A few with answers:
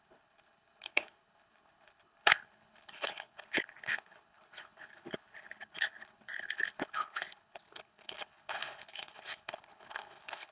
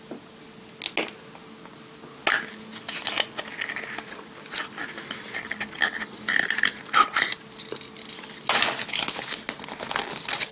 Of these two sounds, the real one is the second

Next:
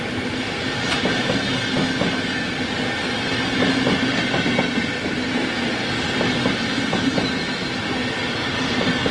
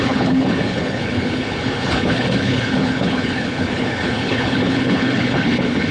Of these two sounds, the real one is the first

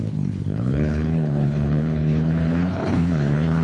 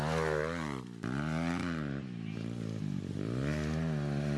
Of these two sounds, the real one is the second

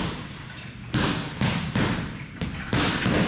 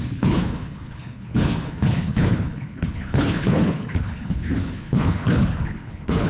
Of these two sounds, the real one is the first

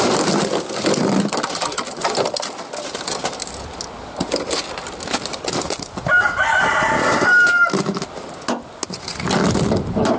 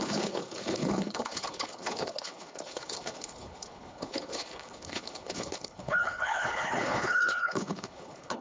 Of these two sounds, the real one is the first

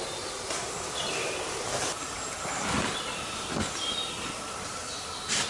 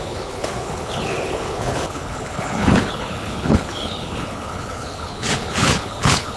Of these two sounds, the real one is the first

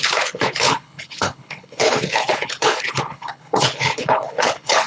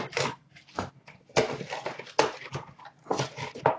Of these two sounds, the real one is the second